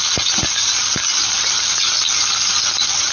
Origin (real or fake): real